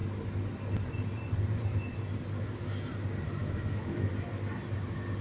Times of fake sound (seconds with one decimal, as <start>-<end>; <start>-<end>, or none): 3.4-4.1